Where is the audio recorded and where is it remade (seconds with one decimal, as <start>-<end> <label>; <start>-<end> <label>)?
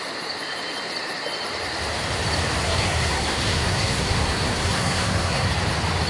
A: 0.0-2.6 recorded; 2.6-5.5 remade; 5.5-6.1 recorded